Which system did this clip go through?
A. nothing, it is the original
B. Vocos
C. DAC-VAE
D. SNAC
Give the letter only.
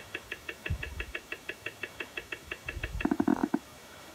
C